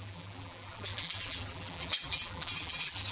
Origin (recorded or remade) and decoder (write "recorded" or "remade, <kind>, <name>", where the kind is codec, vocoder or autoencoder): remade, vocoder, BigVGAN v2